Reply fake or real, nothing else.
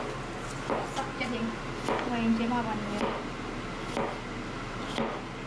real